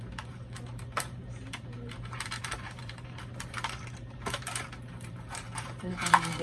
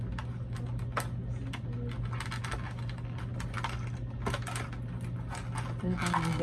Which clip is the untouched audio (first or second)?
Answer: second